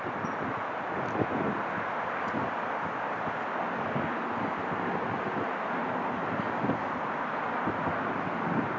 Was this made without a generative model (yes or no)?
yes